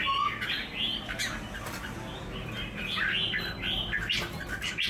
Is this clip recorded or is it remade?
recorded